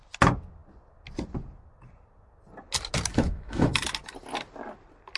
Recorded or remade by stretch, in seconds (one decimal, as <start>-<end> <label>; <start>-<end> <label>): 0.0-3.1 recorded; 3.1-3.8 remade; 3.8-5.2 recorded